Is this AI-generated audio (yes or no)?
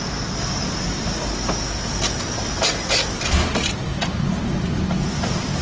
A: no